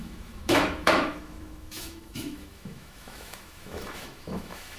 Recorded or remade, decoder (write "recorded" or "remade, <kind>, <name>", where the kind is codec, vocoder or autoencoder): remade, autoencoder, DAC-VAE